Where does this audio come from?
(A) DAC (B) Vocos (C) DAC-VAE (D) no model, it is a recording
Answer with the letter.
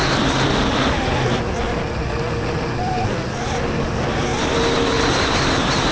D